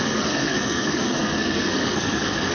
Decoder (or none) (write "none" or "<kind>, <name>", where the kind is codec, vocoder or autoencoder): codec, SNAC